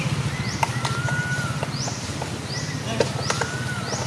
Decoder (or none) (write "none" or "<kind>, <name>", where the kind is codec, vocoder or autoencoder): none